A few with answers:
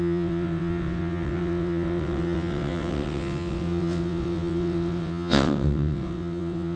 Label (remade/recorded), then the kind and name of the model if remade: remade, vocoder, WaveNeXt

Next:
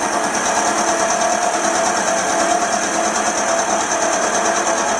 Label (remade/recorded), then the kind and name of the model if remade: recorded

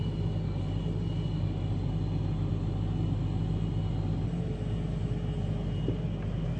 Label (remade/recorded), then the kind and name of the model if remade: recorded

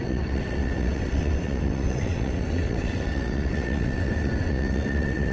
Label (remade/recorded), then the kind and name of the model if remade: remade, vocoder, WaveNeXt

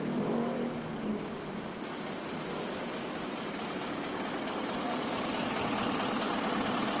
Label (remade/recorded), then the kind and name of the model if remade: recorded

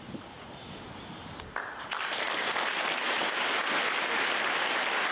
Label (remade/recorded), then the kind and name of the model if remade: recorded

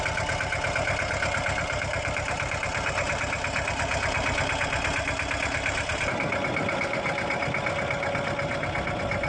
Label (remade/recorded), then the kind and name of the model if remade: recorded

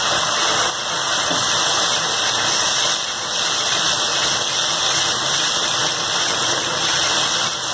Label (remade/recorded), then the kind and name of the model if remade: recorded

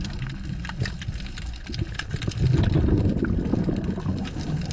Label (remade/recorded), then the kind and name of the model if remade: recorded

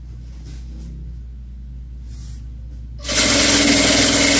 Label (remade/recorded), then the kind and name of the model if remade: recorded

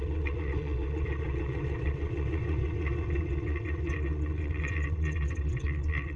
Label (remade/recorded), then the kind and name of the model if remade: remade, vocoder, WaveNeXt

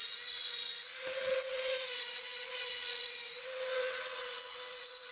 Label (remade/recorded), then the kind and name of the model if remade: remade, vocoder, WaveNeXt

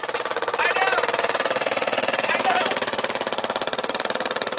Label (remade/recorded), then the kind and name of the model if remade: remade, vocoder, WaveNeXt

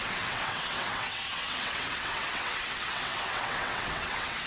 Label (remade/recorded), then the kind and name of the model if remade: remade, vocoder, WaveNeXt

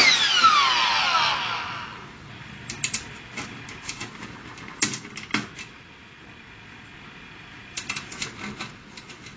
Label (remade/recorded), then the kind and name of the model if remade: recorded